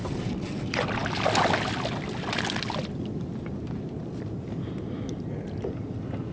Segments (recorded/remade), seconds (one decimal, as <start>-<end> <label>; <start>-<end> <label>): 0.0-6.3 recorded